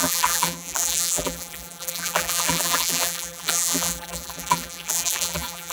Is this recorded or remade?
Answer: remade